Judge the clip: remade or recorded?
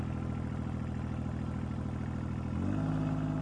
recorded